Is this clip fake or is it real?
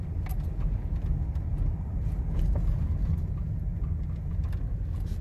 real